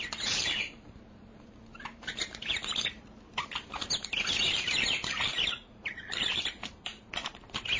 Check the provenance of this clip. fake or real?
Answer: fake